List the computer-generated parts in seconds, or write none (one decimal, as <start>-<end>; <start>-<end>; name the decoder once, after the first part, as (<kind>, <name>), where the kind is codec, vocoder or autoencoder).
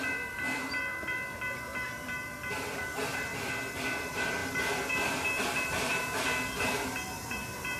0.0-7.8 (vocoder, BigVGAN v2)